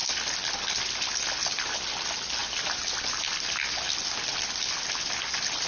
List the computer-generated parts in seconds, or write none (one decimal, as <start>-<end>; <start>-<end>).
none